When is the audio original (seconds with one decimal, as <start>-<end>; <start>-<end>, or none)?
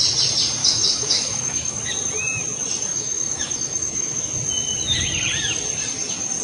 0.0-0.6; 1.8-2.9; 4.2-6.4